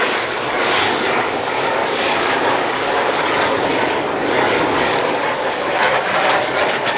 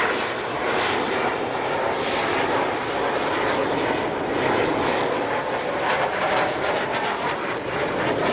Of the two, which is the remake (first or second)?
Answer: first